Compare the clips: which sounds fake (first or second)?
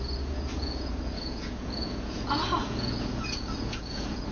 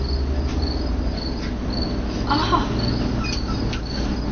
first